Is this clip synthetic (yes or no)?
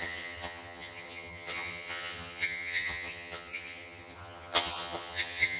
yes